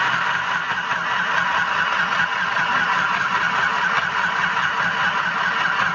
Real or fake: real